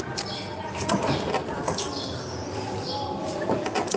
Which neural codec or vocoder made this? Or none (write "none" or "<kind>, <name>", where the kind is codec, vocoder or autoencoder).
none